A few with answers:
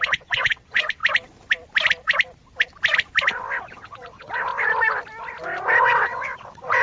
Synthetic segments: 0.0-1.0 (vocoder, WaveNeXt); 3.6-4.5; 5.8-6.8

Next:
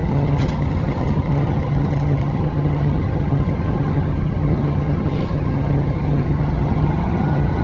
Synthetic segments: 0.0-7.6 (vocoder, HiFi-GAN)

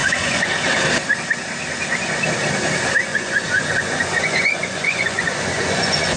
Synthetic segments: 0.0-0.5 (vocoder, Vocos); 3.1-6.2

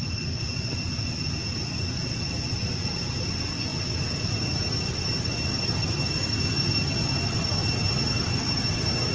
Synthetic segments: none

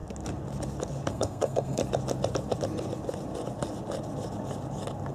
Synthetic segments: 1.1-1.8 (codec, SNAC)